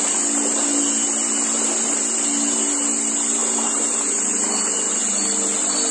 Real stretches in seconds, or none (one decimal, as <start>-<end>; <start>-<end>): 0.0-5.9